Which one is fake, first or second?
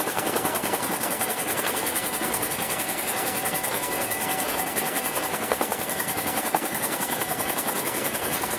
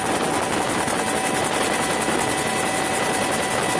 first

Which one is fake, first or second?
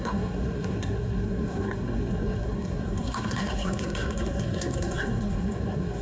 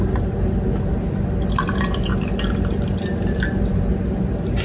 first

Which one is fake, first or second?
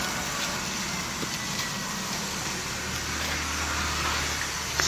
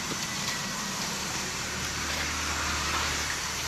second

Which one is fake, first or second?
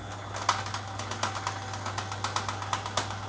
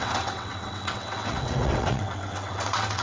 second